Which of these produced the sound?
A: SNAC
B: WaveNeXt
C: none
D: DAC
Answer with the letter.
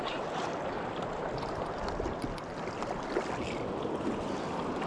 C